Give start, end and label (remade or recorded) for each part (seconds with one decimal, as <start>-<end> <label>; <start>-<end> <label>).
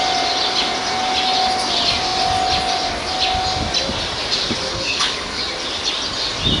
0.0-4.7 recorded; 4.7-5.4 remade; 5.4-6.6 recorded